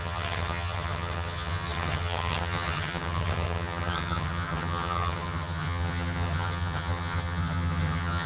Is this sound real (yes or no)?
no